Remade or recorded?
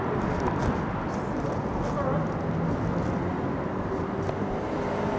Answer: recorded